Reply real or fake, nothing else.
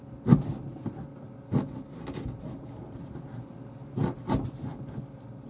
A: real